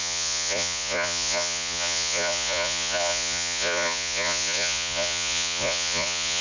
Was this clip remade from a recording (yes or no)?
yes